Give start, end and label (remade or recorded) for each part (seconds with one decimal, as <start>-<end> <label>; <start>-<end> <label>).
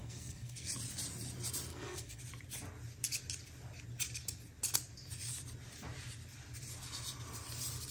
0.0-0.7 remade; 0.7-1.7 recorded; 1.7-2.2 remade; 2.2-7.9 recorded